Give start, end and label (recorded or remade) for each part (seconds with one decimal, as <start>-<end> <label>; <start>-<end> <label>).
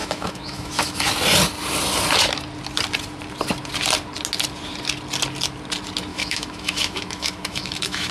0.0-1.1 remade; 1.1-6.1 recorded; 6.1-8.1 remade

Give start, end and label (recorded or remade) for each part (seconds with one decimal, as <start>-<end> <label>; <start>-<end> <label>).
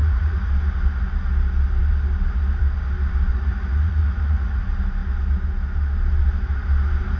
0.0-0.5 remade; 0.5-3.3 recorded; 3.3-4.6 remade; 4.6-7.2 recorded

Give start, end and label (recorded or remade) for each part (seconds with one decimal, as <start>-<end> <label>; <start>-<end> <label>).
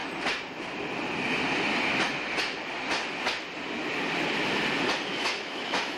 0.0-5.1 recorded; 5.1-6.0 remade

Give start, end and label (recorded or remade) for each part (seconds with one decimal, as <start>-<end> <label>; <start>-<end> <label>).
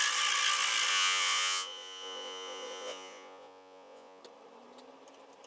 0.0-0.9 recorded; 0.9-4.2 remade; 4.2-5.5 recorded